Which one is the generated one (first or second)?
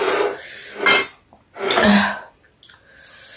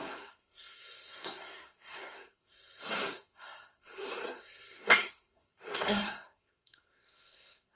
second